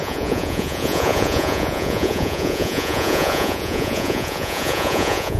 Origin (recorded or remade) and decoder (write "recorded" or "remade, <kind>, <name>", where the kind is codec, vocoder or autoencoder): remade, vocoder, Vocos